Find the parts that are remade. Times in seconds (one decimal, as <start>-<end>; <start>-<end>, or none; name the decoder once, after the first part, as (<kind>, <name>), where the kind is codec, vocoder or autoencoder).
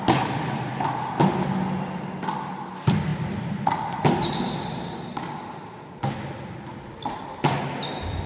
none